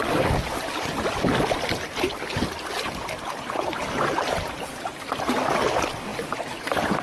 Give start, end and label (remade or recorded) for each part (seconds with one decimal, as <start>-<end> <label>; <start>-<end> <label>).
0.0-7.0 recorded